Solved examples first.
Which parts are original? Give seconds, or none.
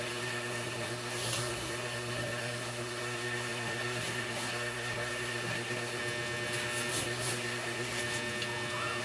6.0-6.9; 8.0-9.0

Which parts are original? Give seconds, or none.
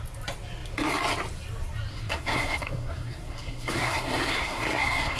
0.0-1.9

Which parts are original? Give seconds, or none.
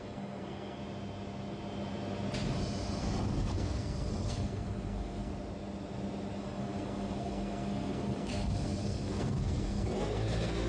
0.8-3.0; 5.3-6.4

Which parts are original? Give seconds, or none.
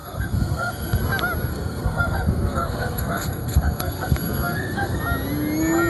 1.0-1.5; 5.0-5.9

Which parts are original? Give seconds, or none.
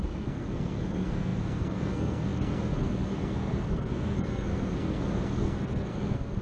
none